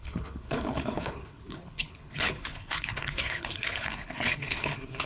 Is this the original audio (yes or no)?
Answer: no